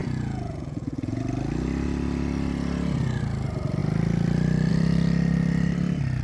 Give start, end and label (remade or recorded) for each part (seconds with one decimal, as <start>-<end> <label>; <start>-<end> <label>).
0.0-1.2 remade; 1.2-6.2 recorded